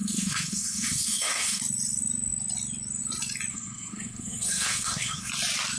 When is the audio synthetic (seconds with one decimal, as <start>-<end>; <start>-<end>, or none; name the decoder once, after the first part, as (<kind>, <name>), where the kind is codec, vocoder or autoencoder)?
0.0-1.6 (codec, SNAC); 3.5-5.3